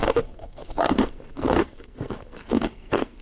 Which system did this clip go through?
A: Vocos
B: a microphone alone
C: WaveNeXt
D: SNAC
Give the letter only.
D